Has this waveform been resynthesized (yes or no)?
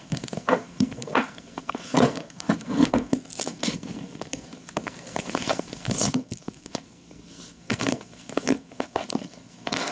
yes